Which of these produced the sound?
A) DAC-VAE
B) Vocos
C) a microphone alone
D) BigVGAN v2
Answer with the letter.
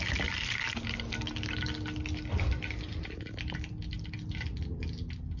C